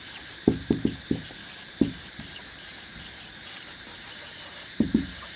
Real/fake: fake